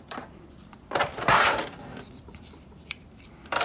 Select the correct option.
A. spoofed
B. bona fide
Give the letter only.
A